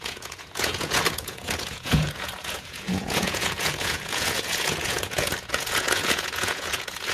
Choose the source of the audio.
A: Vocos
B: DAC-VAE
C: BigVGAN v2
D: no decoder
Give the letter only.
A